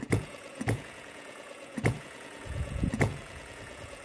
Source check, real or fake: fake